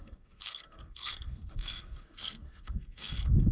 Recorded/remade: remade